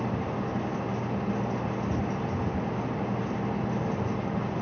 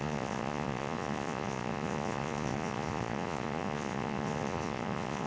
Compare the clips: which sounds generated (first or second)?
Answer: second